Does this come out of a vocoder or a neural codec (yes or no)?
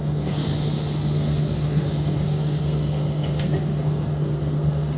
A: yes